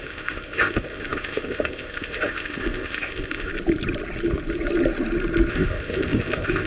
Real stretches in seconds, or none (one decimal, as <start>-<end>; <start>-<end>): 3.5-5.5